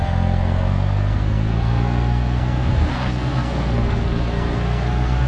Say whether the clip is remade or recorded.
remade